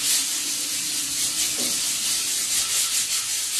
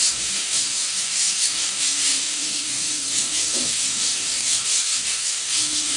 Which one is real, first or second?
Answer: first